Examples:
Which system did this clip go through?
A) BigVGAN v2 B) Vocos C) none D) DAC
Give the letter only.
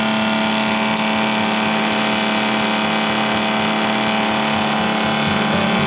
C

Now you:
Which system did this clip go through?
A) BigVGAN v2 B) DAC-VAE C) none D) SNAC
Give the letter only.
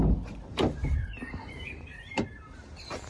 A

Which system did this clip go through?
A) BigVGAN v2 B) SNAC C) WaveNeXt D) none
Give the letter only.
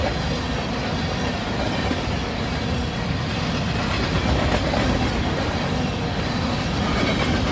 D